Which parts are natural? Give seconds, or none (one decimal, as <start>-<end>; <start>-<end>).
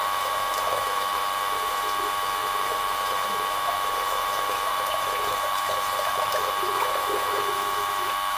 none